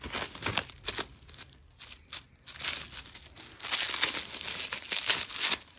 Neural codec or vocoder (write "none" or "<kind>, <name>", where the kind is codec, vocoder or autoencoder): none